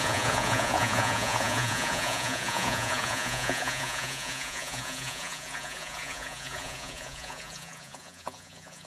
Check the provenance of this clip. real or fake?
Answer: fake